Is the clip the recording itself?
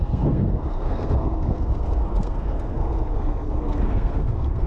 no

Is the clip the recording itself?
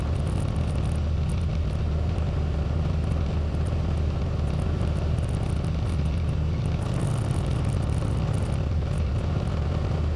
yes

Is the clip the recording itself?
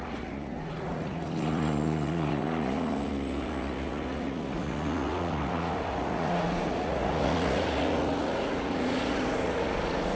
no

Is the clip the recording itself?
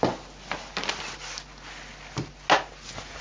yes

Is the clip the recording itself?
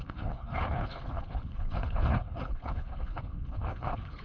no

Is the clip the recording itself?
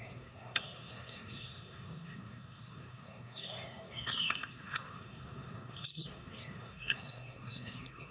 no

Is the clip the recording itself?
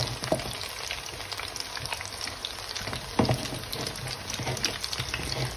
yes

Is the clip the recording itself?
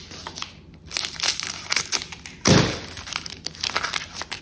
yes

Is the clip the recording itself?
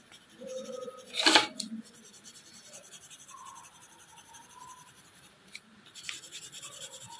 no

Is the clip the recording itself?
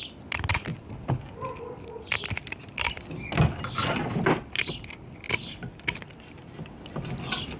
yes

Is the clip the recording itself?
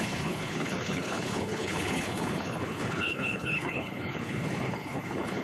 no